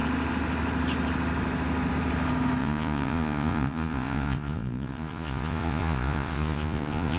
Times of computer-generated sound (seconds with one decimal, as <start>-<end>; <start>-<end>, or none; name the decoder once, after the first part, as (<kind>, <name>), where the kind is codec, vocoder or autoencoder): 2.6-7.2 (vocoder, Vocos)